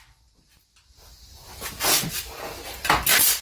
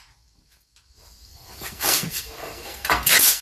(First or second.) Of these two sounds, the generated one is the second